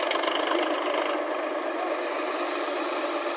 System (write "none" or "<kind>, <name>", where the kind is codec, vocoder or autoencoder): none